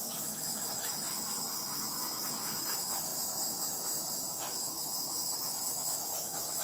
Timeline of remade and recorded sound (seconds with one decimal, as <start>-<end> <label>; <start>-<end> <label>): 0.0-6.6 remade